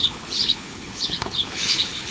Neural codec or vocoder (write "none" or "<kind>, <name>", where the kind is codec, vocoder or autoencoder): codec, HILCodec